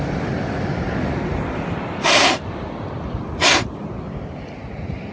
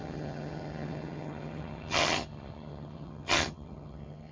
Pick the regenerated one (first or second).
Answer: second